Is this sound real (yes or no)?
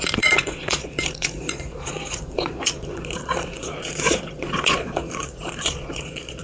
no